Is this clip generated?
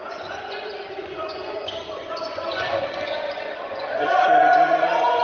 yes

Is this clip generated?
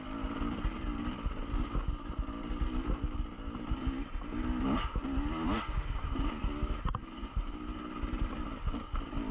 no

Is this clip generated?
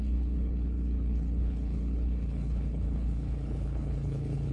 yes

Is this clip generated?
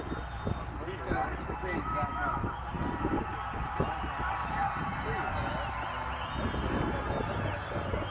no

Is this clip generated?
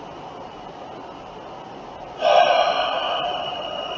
no